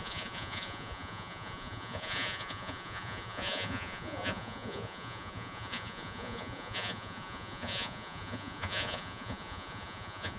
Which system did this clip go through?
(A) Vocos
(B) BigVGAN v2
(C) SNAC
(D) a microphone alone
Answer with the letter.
A